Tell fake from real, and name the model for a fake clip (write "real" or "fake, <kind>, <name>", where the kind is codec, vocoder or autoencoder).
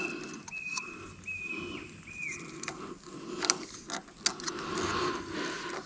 real